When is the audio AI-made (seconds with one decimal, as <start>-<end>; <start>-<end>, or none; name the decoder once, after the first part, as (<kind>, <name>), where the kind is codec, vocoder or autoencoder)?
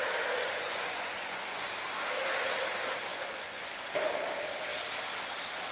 0.4-1.7 (vocoder, Vocos); 3.1-3.9